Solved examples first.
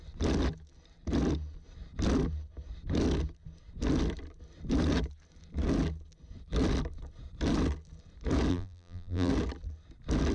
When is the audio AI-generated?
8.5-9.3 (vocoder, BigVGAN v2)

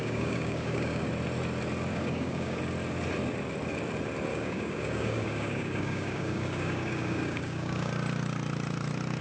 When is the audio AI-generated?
0.0-1.1 (codec, DAC); 1.9-2.6; 4.3-7.9